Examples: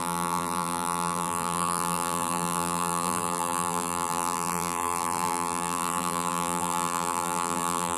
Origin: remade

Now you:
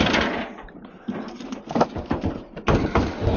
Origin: remade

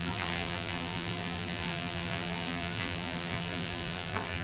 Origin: remade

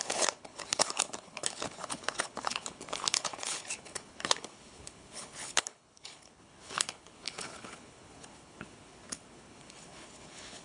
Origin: remade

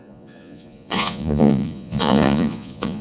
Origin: remade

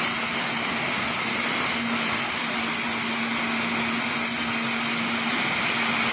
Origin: recorded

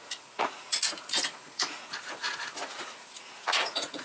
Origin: remade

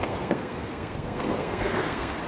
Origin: remade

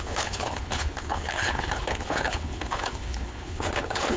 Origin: remade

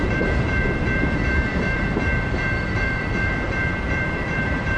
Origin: remade